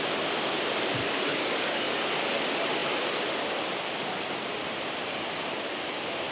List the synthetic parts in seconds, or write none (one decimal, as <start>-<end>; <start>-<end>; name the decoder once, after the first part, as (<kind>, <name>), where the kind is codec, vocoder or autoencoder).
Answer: 1.0-2.1 (codec, DAC)